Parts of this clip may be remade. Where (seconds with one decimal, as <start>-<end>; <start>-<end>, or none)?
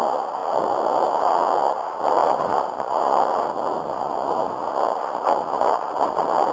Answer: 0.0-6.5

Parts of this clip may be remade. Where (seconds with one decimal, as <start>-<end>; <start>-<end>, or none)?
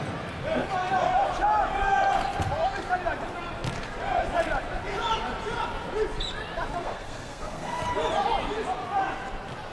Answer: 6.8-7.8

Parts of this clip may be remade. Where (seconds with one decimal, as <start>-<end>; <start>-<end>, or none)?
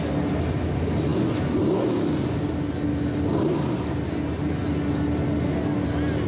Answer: none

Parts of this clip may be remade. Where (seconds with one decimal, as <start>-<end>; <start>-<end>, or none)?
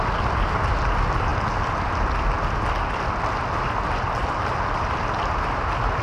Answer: none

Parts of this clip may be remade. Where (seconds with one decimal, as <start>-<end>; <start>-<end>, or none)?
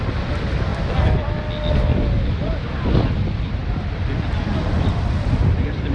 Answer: none